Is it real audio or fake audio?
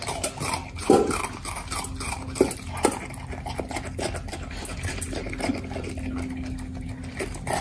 real